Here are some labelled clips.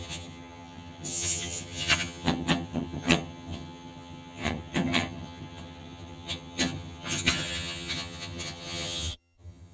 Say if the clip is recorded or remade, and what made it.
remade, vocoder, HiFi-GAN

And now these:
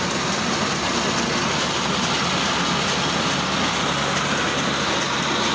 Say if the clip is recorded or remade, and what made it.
recorded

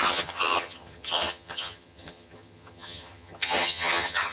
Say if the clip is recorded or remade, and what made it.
remade, vocoder, HiFi-GAN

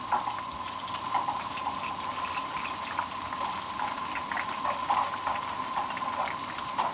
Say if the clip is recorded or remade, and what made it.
recorded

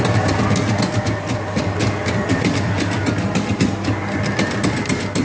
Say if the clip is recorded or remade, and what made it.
recorded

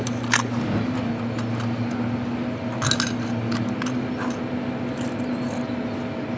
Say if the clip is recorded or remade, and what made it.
recorded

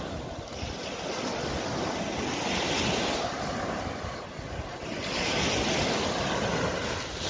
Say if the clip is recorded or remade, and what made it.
recorded